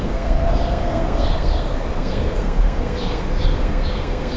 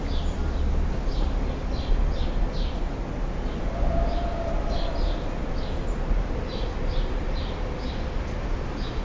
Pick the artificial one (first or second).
first